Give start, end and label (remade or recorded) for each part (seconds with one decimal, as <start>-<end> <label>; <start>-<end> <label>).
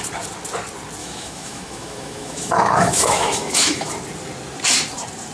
0.0-1.0 recorded; 1.0-3.9 remade; 3.9-5.3 recorded